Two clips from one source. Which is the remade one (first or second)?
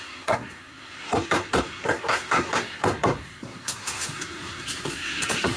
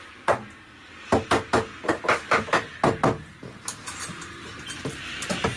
first